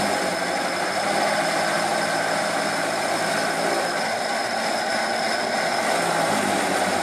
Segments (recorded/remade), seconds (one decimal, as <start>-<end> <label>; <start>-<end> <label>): 0.0-7.0 recorded